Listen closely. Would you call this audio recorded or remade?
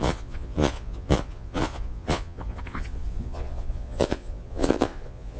remade